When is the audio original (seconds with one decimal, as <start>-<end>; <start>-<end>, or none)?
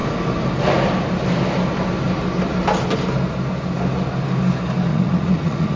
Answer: 0.0-4.9